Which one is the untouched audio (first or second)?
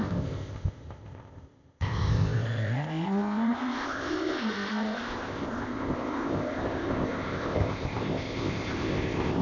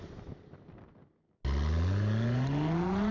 second